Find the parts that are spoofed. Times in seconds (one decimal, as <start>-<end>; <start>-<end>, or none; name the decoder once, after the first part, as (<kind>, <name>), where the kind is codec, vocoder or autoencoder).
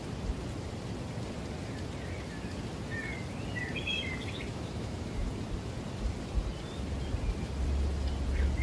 4.5-5.3 (autoencoder, DAC-VAE)